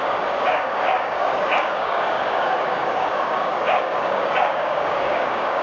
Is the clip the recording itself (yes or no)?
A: no